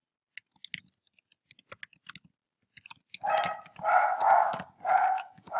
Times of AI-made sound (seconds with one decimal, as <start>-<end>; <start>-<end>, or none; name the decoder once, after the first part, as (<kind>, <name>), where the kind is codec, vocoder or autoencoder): 4.4-5.6 (codec, DAC)